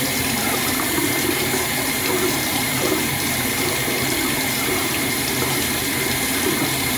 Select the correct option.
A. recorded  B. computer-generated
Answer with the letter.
B